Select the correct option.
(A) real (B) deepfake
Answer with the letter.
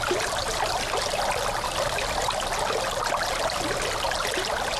A